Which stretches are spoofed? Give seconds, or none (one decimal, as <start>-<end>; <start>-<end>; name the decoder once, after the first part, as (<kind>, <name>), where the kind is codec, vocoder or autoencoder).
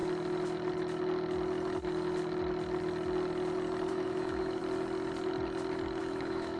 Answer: 3.9-4.6 (autoencoder, DAC-VAE); 6.0-6.6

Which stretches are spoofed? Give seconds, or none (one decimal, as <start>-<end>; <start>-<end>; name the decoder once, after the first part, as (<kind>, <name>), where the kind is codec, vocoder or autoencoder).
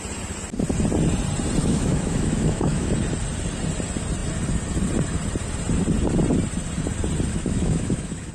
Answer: 1.6-2.9 (autoencoder, DAC-VAE); 7.3-8.3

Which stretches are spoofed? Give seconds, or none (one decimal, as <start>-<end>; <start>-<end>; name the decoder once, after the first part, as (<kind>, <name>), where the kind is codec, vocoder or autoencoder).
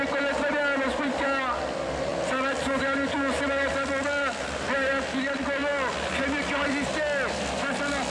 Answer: none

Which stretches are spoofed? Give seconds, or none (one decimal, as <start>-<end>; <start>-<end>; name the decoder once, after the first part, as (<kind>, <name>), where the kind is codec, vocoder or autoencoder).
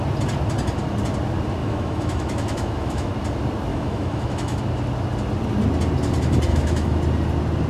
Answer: 1.6-3.1 (autoencoder, DAC-VAE); 3.7-4.6; 6.5-7.0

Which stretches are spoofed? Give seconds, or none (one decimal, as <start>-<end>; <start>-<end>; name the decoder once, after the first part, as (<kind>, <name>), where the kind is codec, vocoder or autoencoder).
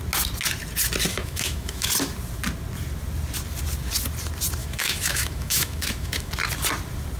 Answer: 1.1-1.9 (autoencoder, DAC-VAE); 4.6-6.3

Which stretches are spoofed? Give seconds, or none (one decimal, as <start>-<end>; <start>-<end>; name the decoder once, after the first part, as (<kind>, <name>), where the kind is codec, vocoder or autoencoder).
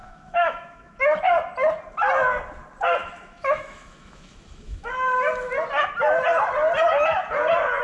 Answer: 0.0-1.0 (autoencoder, DAC-VAE); 3.0-4.9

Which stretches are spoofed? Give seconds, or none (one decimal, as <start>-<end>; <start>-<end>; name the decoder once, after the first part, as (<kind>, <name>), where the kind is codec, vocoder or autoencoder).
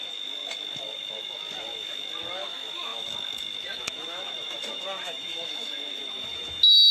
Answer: 0.0-6.9 (autoencoder, DAC-VAE)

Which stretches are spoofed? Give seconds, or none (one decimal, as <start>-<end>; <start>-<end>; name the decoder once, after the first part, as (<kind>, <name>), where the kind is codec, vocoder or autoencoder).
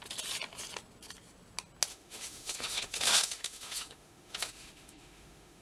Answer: 1.9-5.6 (autoencoder, DAC-VAE)